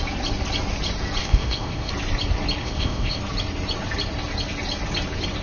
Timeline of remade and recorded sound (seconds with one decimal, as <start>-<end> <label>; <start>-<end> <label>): 0.0-1.2 recorded; 1.2-1.9 remade; 1.9-2.6 recorded; 2.6-3.2 remade; 3.2-5.4 recorded